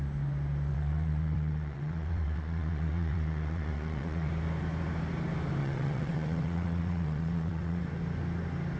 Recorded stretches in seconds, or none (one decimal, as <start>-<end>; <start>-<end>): 0.0-0.7; 4.3-5.6; 7.8-8.8

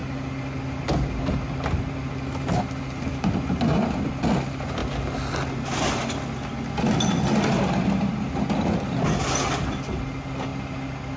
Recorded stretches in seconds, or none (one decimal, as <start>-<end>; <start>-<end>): 0.0-11.2